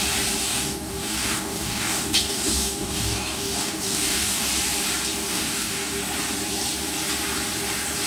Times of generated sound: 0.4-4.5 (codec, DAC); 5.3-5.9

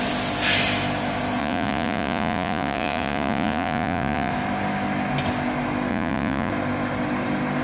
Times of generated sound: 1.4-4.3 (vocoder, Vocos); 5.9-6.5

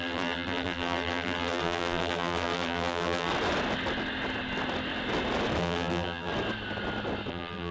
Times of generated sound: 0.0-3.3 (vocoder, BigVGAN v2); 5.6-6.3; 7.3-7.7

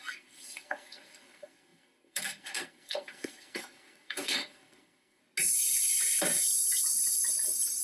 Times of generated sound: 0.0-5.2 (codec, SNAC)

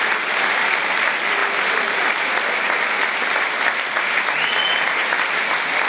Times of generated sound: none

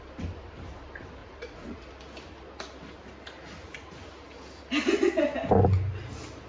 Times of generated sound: 1.2-1.9 (vocoder, Vocos)

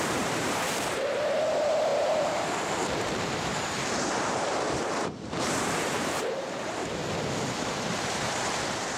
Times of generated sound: 0.0-7.0 (vocoder, BigVGAN v2); 7.6-9.0